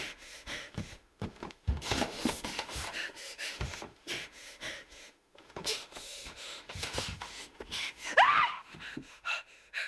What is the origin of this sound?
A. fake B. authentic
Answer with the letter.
A